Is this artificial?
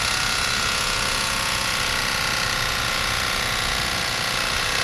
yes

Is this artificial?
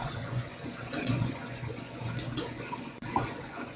yes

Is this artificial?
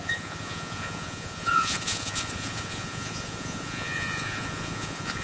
yes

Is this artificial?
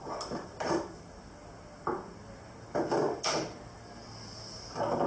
no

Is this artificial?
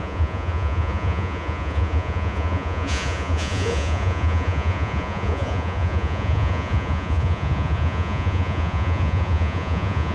yes